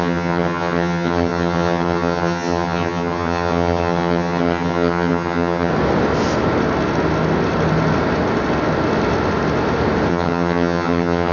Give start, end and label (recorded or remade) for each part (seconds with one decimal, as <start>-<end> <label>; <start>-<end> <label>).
0.0-5.7 remade; 5.7-10.1 recorded; 10.1-11.3 remade